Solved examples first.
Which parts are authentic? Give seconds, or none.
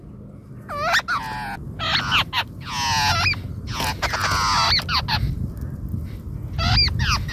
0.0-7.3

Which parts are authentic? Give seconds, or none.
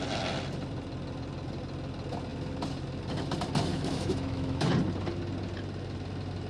0.0-3.7; 4.7-6.5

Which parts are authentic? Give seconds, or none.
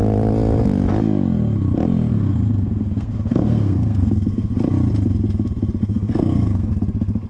0.0-2.1; 4.6-5.8; 6.7-7.3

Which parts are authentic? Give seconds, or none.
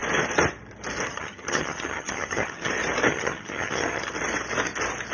0.0-1.1; 2.7-3.1; 4.1-5.1